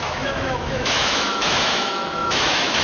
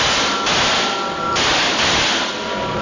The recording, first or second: second